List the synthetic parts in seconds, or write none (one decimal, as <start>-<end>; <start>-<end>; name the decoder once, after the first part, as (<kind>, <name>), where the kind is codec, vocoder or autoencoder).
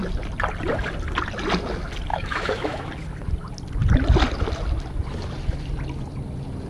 2.1-2.9 (autoencoder, DAC-VAE)